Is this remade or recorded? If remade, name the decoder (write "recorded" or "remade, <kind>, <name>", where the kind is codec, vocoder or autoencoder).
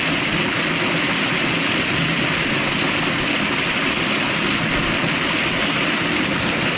recorded